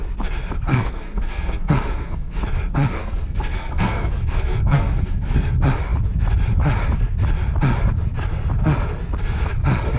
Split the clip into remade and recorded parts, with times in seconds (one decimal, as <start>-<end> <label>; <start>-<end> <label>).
0.0-0.7 recorded; 0.7-2.4 remade; 2.4-3.0 recorded; 3.0-5.5 remade; 5.5-10.0 recorded